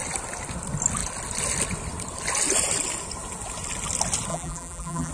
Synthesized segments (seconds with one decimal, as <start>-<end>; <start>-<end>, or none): 4.3-5.1